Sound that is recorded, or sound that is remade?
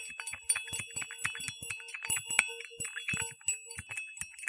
recorded